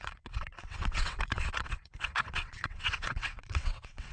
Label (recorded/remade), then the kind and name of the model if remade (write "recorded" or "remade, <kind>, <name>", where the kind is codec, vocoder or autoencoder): remade, vocoder, WaveNeXt